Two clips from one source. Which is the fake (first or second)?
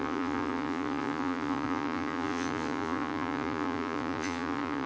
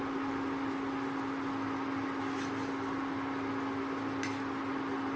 first